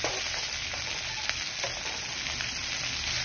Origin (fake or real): real